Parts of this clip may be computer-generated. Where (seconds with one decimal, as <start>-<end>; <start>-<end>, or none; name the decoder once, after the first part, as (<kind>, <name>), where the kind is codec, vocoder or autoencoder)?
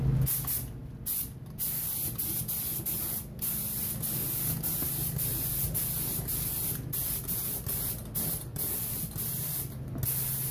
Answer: none